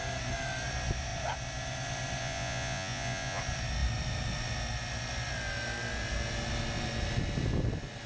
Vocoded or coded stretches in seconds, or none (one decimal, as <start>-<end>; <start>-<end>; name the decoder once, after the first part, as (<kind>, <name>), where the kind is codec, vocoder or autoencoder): 2.2-3.4 (vocoder, Vocos)